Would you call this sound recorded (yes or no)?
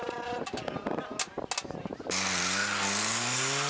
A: yes